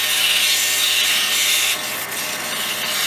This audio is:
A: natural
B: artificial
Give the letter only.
A